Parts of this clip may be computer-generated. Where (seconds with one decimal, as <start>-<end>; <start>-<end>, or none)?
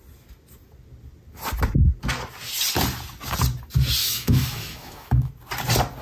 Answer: 4.0-5.3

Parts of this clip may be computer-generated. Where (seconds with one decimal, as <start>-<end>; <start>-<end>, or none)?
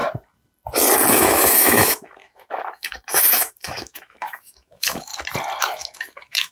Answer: 1.1-5.1; 5.6-6.5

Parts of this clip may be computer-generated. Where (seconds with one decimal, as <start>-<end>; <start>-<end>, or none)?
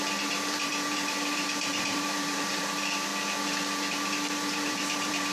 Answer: 0.0-3.1; 3.9-5.3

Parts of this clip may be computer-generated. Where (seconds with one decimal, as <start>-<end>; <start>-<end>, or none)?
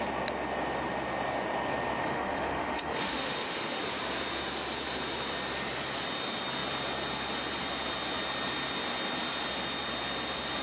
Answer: 2.0-3.8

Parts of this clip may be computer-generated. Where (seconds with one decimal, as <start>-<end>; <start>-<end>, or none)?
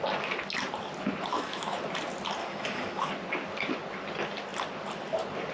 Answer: 1.3-1.8; 2.4-3.1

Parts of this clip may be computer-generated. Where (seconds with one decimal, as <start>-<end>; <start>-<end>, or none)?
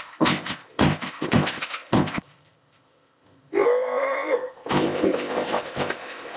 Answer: 0.0-6.4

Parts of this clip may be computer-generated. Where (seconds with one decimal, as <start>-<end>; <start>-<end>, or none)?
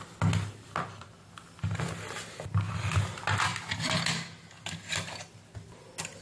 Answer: none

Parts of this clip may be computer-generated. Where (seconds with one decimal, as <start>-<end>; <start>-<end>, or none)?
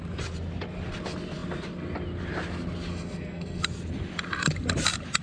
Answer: 2.9-3.6